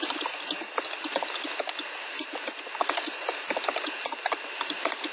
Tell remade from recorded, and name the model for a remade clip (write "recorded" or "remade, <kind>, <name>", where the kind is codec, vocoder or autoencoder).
recorded